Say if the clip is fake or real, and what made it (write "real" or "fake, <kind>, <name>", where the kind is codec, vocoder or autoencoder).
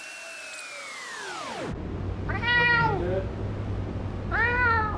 real